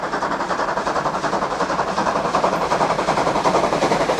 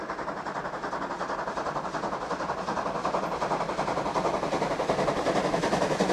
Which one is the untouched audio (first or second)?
second